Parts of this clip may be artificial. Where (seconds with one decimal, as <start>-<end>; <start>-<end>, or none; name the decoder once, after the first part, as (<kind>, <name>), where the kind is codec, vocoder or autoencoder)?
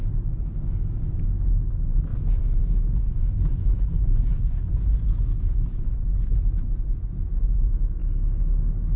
2.1-6.3 (vocoder, Vocos)